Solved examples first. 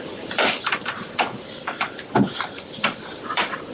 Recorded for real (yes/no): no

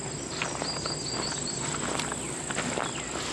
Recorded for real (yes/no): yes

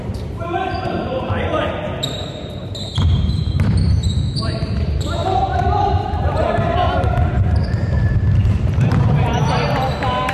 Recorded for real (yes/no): no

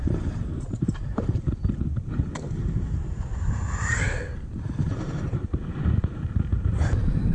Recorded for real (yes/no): no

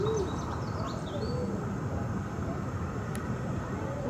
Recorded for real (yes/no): yes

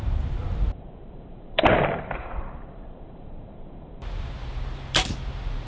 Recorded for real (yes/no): no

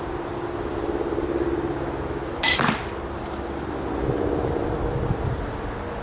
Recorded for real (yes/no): yes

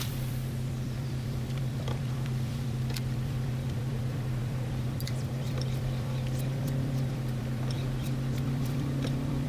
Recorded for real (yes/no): no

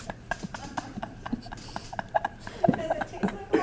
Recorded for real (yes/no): no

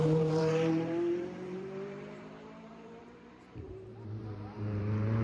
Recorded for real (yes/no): no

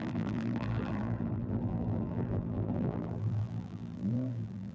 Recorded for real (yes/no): no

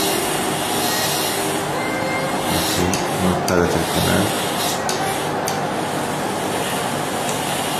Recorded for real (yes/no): yes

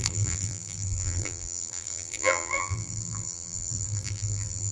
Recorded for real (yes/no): no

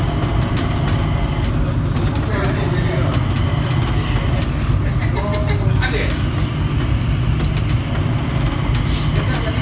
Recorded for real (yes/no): yes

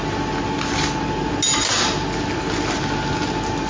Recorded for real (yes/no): yes